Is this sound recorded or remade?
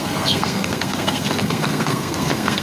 remade